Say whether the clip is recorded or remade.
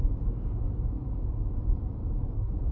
recorded